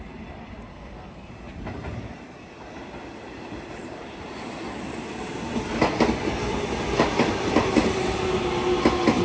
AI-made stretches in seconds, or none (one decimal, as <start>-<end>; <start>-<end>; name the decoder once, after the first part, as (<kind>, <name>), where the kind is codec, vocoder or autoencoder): 0.7-1.3 (codec, SNAC)